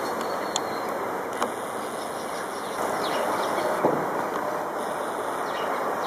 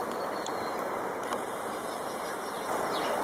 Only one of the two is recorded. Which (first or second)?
first